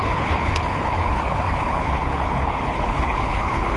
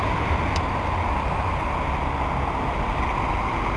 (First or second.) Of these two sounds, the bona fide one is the second